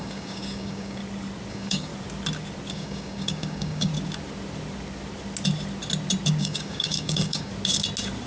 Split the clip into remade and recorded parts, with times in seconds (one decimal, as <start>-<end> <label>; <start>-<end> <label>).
0.0-1.0 remade; 1.0-1.5 recorded; 1.5-1.9 remade; 1.9-2.7 recorded; 2.7-3.9 remade; 3.9-6.4 recorded; 6.4-7.5 remade; 7.5-8.3 recorded